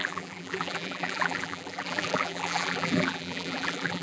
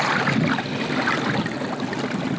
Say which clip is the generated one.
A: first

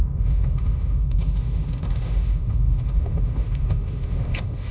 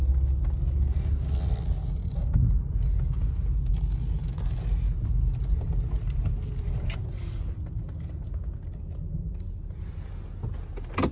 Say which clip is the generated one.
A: first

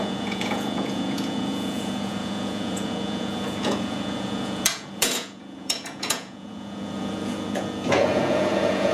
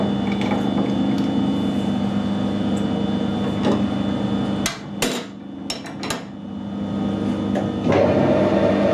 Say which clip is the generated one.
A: first